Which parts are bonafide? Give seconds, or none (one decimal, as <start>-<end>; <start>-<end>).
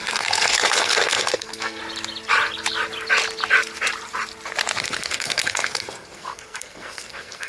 1.8-4.8